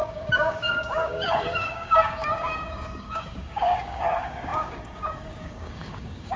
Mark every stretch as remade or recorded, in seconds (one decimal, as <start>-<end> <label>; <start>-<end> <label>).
0.0-6.4 remade